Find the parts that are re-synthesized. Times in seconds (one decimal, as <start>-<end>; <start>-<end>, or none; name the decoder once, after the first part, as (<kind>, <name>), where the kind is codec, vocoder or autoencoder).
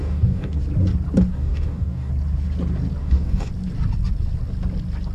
0.0-0.6 (codec, DAC); 1.3-2.1; 3.0-3.5